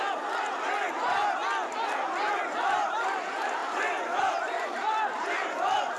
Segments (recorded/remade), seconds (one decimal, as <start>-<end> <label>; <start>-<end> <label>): 0.0-6.0 recorded

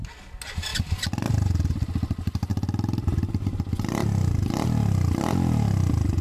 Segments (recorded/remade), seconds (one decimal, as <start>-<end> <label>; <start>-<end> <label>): 0.0-6.2 recorded

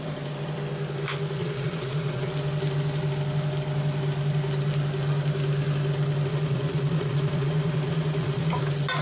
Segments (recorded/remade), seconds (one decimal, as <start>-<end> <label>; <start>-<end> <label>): 0.0-1.4 recorded; 1.4-2.3 remade; 2.3-6.3 recorded; 6.3-8.6 remade; 8.6-9.0 recorded

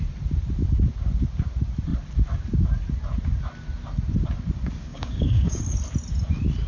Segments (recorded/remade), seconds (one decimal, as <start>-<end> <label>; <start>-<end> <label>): 0.0-4.9 recorded; 4.9-5.6 remade; 5.6-6.7 recorded